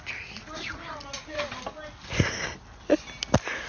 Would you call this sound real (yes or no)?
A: yes